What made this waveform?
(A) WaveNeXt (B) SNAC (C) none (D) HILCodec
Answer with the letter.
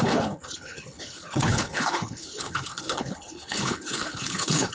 D